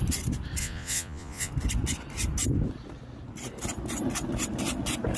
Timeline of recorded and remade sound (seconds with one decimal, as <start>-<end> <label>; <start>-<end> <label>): 0.0-0.6 recorded; 0.6-1.5 remade; 1.5-5.2 recorded